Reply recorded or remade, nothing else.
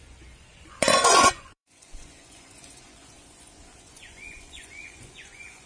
remade